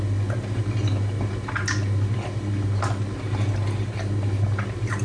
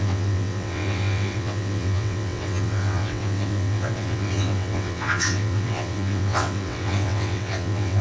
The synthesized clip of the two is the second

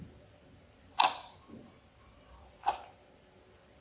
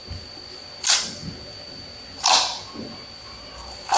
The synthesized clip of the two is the first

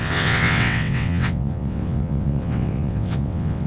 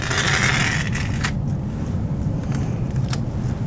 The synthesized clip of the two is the first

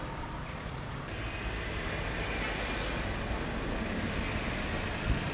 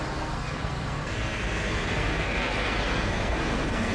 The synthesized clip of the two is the second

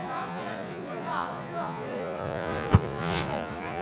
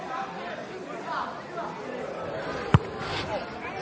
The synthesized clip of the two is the first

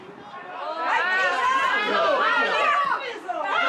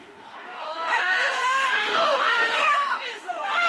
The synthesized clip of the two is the second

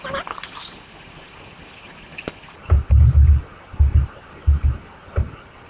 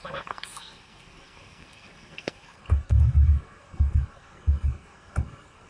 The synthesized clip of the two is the second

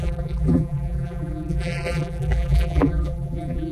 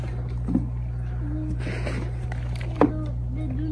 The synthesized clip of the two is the first